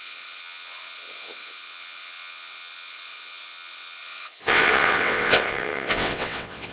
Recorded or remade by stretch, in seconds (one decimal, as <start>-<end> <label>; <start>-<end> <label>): 0.0-6.7 remade